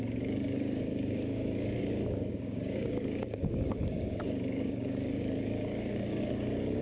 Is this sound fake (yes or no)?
yes